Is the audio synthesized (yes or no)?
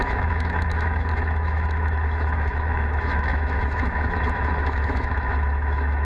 yes